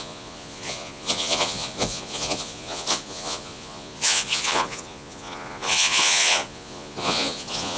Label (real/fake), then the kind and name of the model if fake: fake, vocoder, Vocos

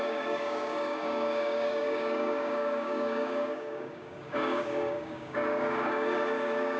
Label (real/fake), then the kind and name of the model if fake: fake, codec, DAC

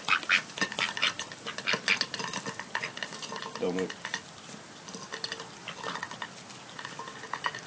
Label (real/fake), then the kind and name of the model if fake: real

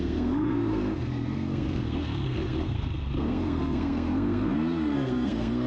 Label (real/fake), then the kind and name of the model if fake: fake, codec, SNAC